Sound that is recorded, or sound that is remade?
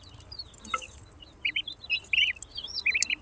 recorded